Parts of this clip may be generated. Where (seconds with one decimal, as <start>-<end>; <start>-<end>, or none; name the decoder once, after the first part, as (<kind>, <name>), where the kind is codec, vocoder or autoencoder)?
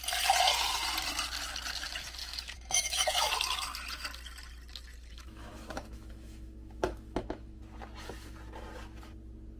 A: 2.2-3.3 (autoencoder, DAC-VAE); 5.1-7.6